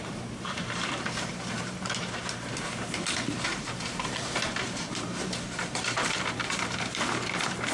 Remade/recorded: remade